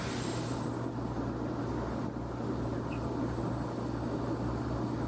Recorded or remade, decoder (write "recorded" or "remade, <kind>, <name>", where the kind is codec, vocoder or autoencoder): recorded